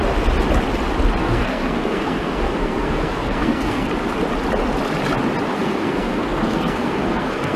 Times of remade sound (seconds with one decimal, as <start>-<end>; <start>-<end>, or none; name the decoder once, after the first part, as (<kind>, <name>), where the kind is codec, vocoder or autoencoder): 1.2-3.9 (codec, SNAC); 5.5-7.6